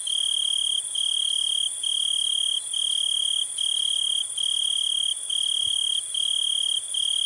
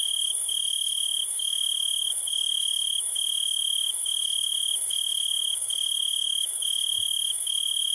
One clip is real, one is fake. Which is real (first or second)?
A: first